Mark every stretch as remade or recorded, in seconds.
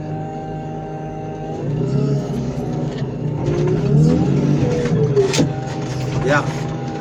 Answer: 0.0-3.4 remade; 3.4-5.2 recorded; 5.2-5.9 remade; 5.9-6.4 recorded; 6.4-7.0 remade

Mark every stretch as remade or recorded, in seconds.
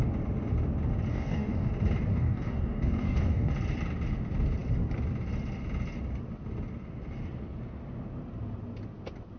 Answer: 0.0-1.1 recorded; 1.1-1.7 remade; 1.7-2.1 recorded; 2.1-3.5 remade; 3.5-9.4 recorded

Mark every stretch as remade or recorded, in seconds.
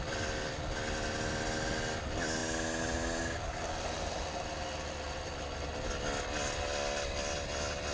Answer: 0.0-7.9 recorded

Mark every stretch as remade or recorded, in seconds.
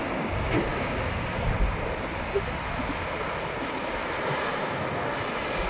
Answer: 0.0-0.7 recorded; 0.7-1.4 remade; 1.4-5.7 recorded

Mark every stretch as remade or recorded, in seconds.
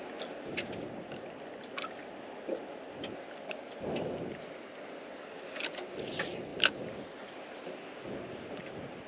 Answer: 0.0-9.1 recorded